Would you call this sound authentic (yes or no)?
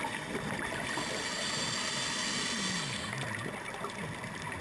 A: yes